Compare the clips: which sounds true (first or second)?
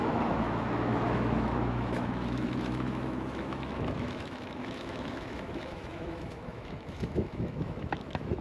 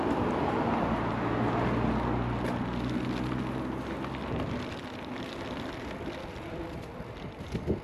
second